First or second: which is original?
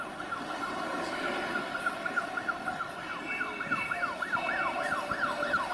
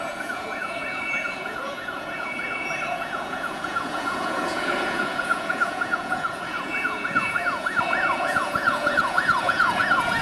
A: first